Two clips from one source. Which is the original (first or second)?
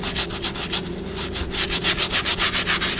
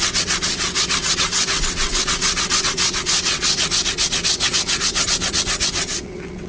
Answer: first